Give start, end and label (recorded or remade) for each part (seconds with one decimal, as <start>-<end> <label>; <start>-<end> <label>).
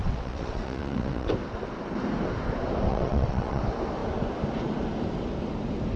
0.0-1.3 remade; 1.3-2.9 recorded; 2.9-3.6 remade; 3.6-6.0 recorded